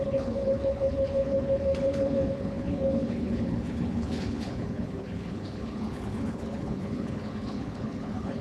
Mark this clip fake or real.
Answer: fake